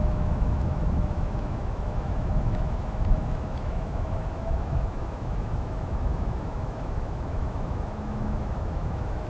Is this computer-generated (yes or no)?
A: yes